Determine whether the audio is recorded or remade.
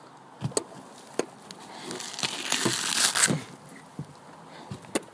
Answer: recorded